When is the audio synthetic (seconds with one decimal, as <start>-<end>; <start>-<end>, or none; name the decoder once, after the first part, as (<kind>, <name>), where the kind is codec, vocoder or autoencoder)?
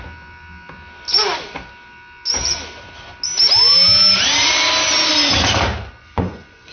5.8-6.7 (vocoder, Vocos)